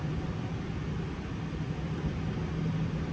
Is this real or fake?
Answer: real